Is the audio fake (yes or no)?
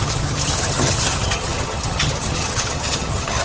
yes